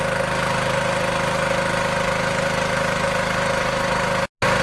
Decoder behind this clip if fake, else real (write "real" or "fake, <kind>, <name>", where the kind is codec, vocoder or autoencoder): real